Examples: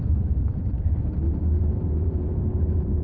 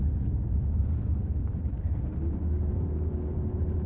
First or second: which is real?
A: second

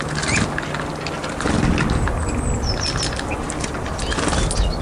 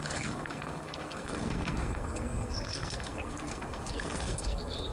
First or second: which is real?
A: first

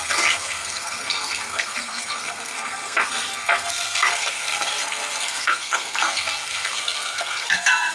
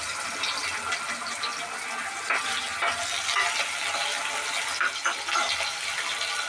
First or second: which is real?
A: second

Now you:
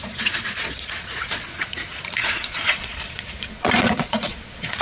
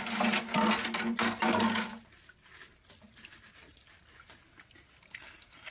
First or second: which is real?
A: second